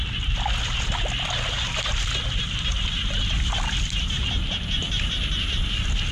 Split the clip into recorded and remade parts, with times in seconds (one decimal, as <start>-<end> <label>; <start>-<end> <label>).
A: 0.0-6.1 recorded